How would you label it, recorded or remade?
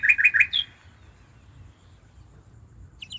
recorded